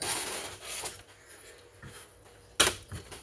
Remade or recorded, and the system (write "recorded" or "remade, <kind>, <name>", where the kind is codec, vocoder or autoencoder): recorded